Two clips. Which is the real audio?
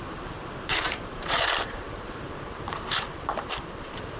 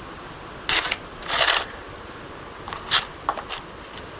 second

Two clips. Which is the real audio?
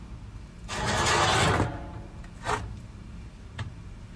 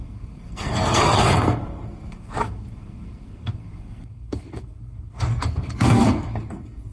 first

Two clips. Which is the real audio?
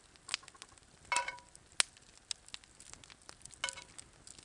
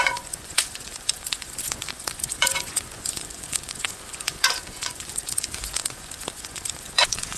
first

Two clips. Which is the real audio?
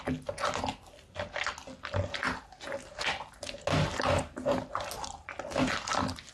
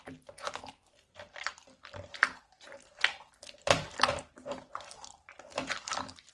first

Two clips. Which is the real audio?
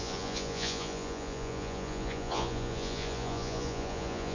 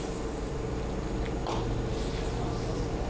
second